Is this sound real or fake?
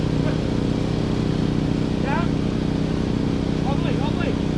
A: real